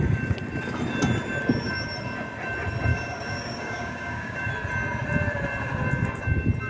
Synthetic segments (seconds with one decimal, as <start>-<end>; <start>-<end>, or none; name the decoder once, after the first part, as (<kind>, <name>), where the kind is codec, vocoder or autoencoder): 2.9-4.5 (codec, DAC)